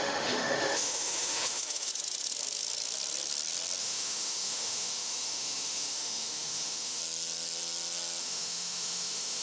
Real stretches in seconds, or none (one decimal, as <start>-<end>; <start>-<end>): 1.9-3.8; 7.0-8.2